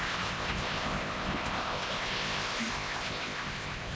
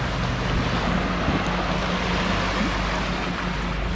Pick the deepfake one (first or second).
first